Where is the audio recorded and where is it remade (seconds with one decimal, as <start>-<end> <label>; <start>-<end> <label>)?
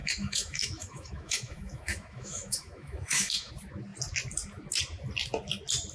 0.0-3.5 remade; 3.5-5.9 recorded